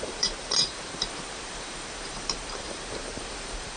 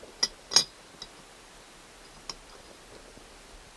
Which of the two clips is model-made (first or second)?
first